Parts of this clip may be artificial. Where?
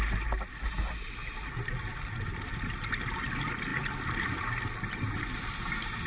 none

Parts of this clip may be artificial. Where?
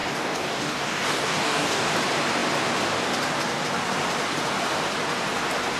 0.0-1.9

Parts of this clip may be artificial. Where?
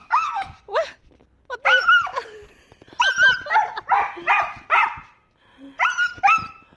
0.0-0.6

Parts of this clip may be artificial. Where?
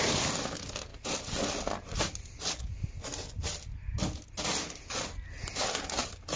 none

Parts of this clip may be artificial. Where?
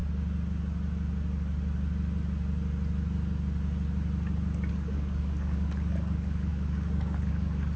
4.7-7.8